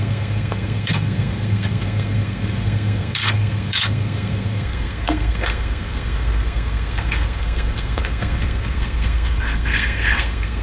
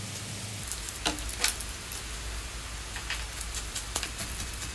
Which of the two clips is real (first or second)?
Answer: second